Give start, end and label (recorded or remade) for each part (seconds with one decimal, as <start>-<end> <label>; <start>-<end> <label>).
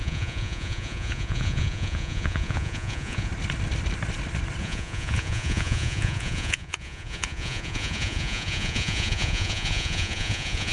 0.0-3.3 remade; 3.3-4.6 recorded; 4.6-10.7 remade